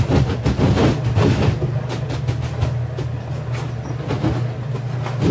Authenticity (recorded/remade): recorded